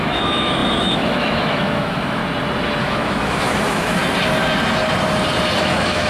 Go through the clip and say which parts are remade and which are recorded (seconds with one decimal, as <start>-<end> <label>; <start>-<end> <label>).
0.0-2.2 remade; 2.2-2.8 recorded; 2.8-4.0 remade; 4.0-5.6 recorded; 5.6-6.1 remade